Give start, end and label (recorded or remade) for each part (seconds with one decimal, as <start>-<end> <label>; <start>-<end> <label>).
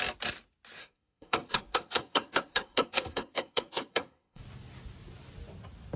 0.0-0.8 recorded; 0.8-4.4 remade; 4.4-6.0 recorded